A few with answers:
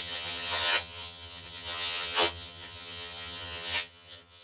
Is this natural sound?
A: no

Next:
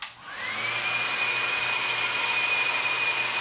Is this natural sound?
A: yes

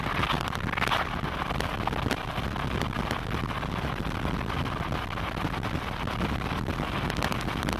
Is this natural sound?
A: yes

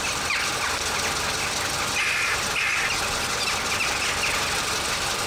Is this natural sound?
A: yes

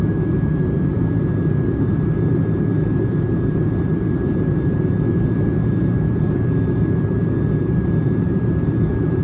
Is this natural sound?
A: no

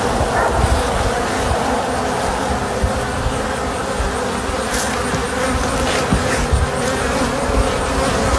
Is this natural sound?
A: yes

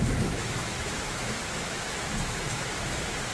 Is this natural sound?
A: no